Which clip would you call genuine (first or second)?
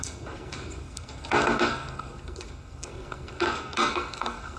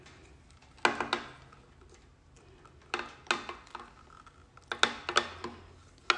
second